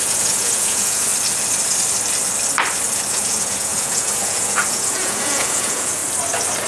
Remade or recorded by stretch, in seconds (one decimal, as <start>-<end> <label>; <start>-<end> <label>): 0.0-1.1 remade; 1.1-3.1 recorded; 3.1-6.0 remade; 6.0-6.7 recorded